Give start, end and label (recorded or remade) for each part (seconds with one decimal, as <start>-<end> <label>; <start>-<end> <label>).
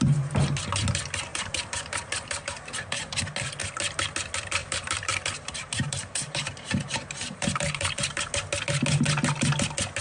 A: 0.0-1.3 recorded; 1.3-3.2 remade; 3.2-4.6 recorded; 4.6-8.3 remade; 8.3-10.0 recorded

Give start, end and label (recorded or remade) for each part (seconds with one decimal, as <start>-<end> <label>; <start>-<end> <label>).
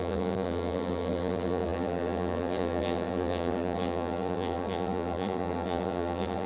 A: 0.0-6.5 remade